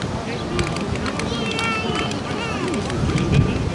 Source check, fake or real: real